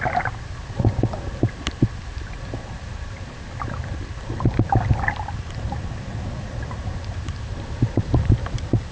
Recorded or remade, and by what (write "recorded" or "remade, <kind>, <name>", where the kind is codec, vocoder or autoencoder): recorded